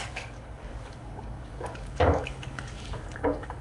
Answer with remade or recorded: remade